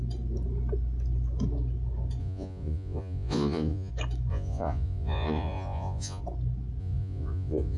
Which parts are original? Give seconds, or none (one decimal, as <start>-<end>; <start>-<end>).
0.0-2.2; 3.9-4.3; 6.2-6.8